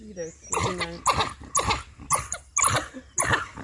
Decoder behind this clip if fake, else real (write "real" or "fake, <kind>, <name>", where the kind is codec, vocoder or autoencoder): real